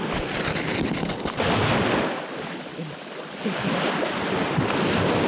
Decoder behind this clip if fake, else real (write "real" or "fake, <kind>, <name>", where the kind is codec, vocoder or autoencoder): real